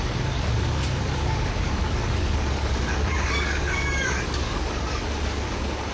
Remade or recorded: remade